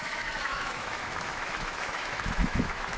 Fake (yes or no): yes